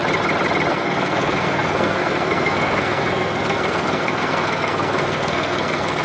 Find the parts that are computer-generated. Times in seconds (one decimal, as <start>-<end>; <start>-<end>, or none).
0.7-6.0